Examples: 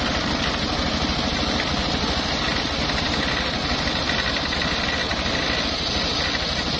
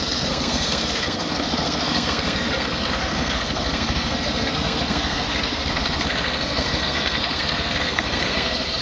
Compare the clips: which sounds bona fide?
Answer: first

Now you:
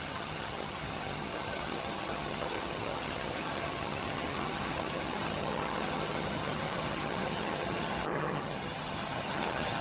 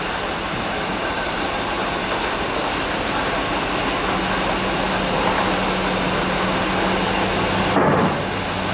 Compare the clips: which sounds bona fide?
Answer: second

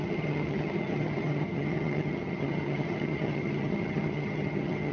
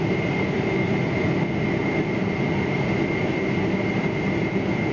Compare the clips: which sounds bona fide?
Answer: second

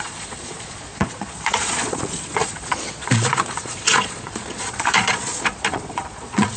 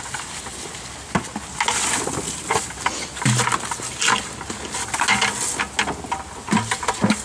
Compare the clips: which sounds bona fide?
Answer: second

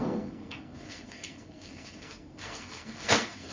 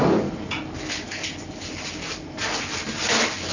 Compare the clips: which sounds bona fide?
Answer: second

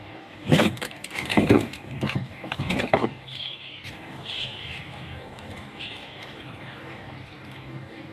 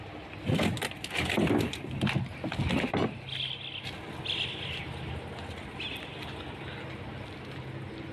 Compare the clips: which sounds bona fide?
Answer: second